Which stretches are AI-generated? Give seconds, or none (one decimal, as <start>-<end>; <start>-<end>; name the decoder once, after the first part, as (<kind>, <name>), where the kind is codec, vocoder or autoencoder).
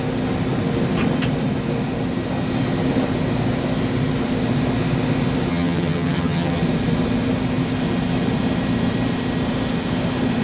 5.5-6.6 (vocoder, HiFi-GAN)